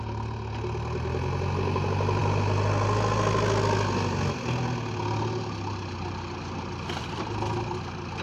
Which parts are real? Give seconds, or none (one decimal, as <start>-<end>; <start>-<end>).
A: 0.0-8.2